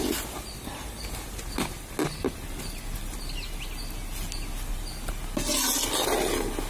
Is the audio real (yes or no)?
yes